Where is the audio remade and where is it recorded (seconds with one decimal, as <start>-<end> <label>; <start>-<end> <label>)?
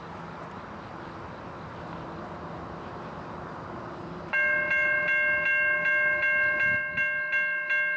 0.0-8.0 recorded